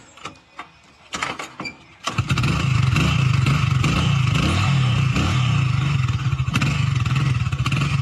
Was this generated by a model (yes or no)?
no